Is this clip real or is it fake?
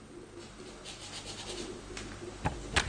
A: real